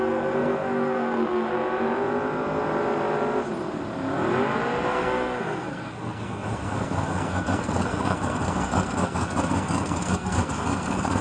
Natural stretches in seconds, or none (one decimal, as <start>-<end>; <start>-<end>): 1.5-4.9